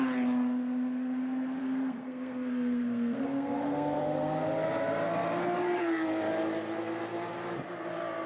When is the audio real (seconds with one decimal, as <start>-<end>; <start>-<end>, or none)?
0.0-1.6; 4.4-8.3